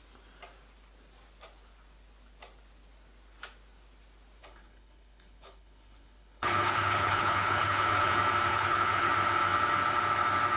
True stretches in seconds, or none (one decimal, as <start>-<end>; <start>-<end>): 0.0-4.4; 8.1-8.5; 9.1-10.6